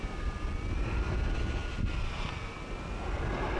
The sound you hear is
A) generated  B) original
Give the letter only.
B